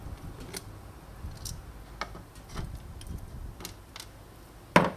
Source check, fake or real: real